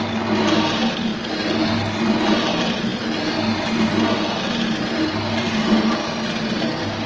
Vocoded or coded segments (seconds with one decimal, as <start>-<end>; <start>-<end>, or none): none